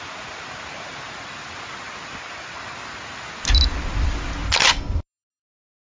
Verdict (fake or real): real